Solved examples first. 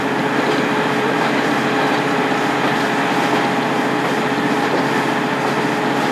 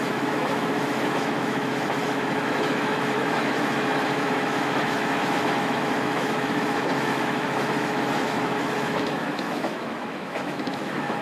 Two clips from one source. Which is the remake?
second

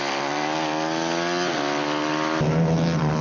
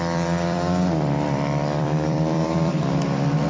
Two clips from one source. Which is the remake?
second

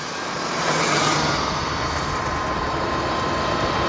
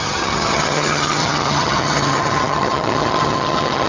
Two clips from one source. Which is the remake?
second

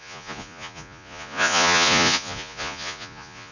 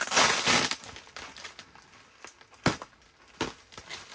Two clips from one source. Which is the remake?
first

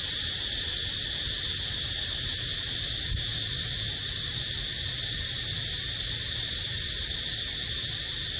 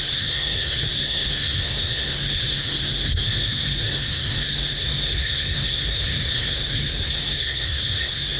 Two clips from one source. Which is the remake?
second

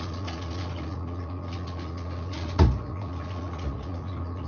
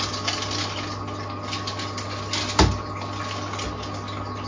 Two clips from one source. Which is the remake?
first